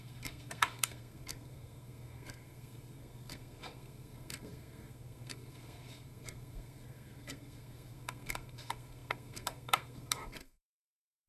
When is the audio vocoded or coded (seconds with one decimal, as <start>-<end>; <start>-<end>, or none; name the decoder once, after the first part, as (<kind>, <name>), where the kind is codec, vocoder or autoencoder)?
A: 0.0-11.3 (codec, SNAC)